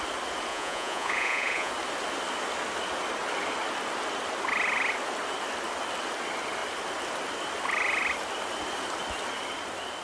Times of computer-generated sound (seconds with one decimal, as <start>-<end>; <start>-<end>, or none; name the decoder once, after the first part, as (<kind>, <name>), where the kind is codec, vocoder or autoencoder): 0.5-1.7 (vocoder, Vocos)

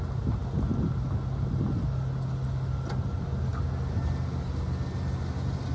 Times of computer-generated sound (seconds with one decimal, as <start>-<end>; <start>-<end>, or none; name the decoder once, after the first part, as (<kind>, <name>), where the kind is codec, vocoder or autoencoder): none

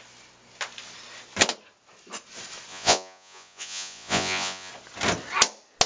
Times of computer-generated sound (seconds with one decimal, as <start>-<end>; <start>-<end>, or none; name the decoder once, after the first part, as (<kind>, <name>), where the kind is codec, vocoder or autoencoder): 2.7-4.7 (vocoder, Vocos)

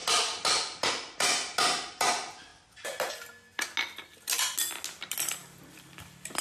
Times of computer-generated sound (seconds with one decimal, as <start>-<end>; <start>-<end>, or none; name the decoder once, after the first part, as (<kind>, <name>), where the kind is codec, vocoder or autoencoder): none

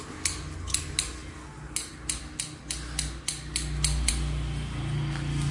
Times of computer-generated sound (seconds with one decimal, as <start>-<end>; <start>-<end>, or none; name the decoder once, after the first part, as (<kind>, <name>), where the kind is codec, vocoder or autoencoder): none